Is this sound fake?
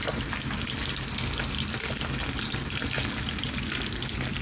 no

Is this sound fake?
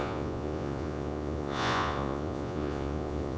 yes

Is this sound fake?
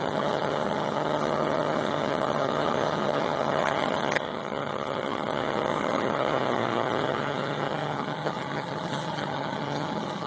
yes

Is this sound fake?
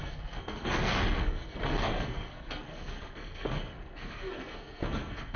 yes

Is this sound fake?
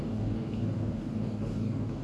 yes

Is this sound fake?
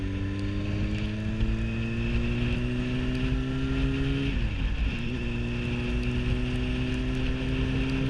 no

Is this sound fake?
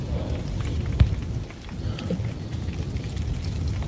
no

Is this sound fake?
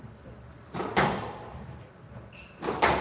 no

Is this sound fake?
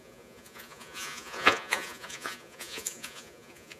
yes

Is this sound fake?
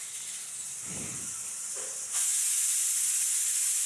no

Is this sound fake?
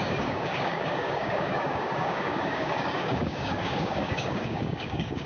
yes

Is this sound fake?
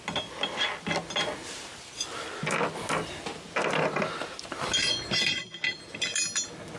no